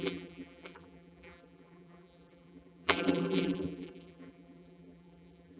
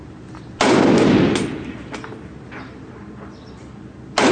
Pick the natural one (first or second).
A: second